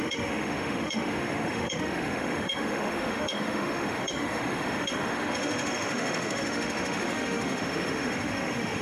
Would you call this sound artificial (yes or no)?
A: yes